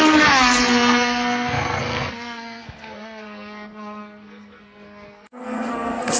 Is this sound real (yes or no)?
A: no